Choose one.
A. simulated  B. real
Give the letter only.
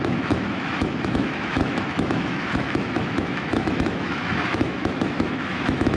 A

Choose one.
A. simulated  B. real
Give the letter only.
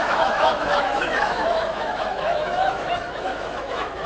A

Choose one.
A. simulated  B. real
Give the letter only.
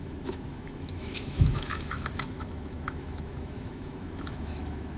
A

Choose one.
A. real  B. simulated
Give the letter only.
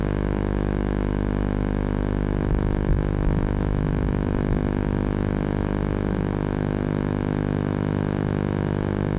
B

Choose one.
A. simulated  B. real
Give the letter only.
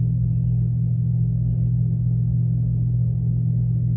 B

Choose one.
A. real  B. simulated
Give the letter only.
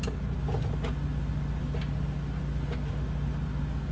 A